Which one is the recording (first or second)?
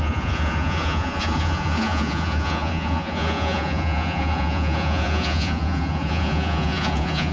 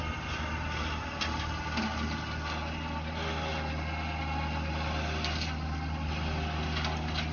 second